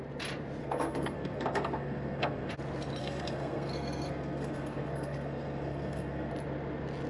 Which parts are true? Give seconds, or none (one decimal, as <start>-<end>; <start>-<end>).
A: 0.0-0.6; 2.5-3.0; 6.3-7.1